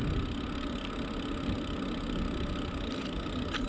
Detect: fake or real real